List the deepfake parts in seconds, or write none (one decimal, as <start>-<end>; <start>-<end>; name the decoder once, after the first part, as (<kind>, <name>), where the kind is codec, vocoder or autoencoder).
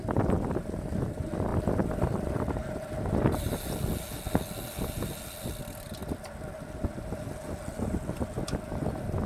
none